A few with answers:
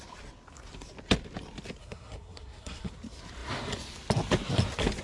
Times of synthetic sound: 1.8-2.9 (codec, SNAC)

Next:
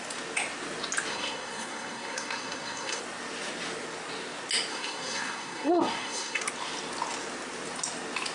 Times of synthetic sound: 1.1-3.0 (codec, SNAC); 4.7-6.4

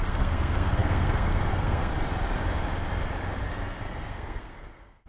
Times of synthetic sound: 0.0-1.9 (codec, SNAC); 3.8-5.1

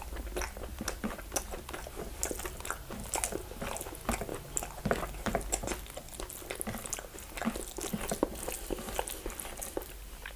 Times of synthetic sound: none